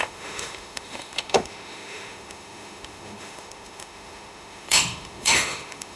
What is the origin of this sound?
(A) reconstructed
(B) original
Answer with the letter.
A